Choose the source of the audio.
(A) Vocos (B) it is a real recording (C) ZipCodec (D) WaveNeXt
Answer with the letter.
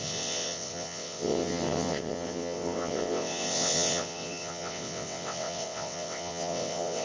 D